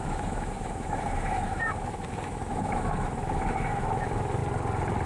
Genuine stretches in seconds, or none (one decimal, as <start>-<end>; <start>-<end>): 4.4-5.1